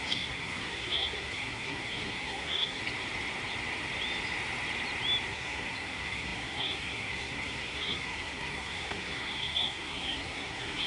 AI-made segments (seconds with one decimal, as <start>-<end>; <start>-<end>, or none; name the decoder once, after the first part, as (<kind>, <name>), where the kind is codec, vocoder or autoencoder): 0.0-2.8 (codec, SNAC); 5.3-10.9